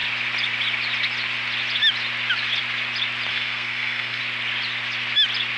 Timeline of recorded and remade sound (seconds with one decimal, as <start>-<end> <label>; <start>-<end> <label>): 0.0-3.3 recorded; 3.3-4.2 remade; 4.2-5.6 recorded